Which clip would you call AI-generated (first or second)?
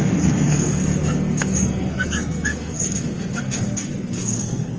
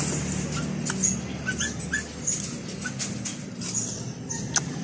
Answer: first